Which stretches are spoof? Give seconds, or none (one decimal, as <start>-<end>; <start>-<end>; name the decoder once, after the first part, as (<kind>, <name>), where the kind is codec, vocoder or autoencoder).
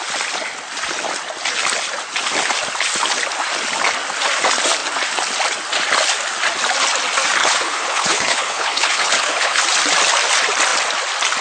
7.4-9.6 (codec, HILCodec)